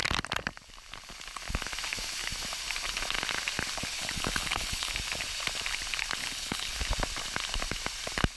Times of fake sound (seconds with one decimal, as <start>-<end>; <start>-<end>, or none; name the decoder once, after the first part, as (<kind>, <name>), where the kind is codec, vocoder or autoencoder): 4.0-4.9 (codec, HILCodec); 6.2-6.7